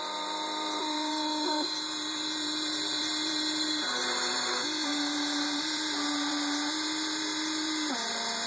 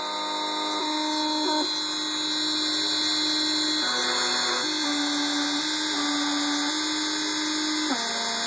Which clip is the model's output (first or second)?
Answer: first